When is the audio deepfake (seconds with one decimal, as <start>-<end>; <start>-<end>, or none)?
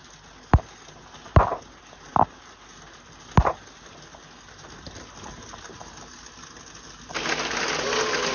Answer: none